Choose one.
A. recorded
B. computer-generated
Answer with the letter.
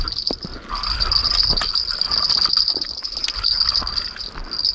A